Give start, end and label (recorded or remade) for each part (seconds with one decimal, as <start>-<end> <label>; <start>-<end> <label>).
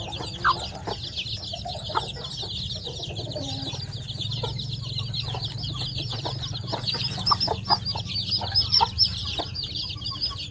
0.0-5.4 recorded; 5.4-9.8 remade; 9.8-10.5 recorded